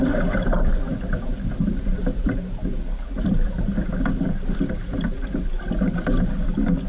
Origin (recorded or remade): remade